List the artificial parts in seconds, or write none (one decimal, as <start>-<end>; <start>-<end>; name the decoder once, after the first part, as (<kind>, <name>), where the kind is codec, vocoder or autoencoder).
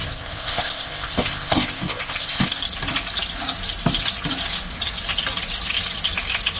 0.0-2.6 (codec, ZipCodec)